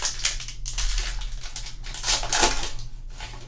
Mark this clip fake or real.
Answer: real